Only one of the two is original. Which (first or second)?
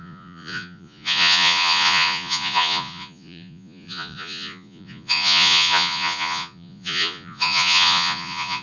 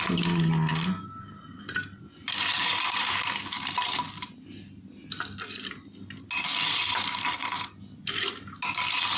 second